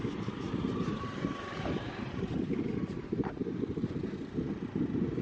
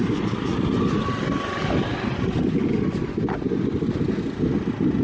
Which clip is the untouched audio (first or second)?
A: second